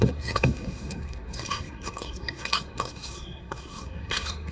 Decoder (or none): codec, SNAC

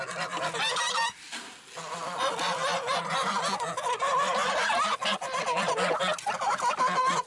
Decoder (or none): none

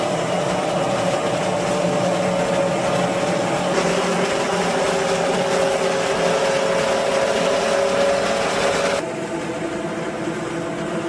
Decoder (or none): none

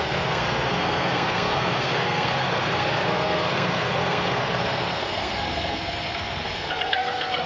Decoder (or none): codec, SNAC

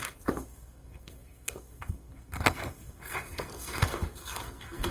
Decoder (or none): codec, SNAC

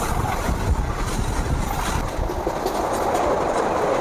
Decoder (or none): none